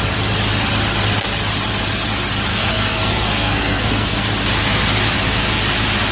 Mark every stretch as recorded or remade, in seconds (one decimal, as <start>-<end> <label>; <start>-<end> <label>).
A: 0.0-2.5 recorded; 2.5-4.3 remade; 4.3-6.1 recorded